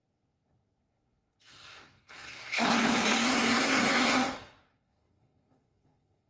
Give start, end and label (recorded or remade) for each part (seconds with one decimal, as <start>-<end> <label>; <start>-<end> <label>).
0.0-6.3 remade